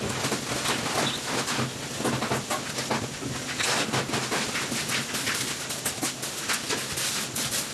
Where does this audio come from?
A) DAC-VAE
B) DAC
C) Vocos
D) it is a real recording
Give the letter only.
D